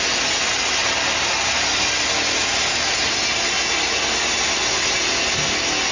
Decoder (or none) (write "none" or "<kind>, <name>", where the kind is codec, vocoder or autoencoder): none